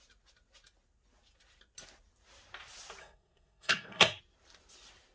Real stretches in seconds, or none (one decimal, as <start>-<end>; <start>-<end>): 0.0-3.0; 4.2-5.1